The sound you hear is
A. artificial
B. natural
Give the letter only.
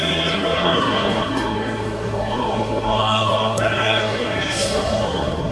A